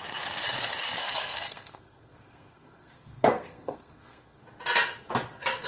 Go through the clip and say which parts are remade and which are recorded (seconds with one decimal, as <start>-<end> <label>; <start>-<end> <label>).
0.0-1.0 recorded; 1.0-4.4 remade; 4.4-5.7 recorded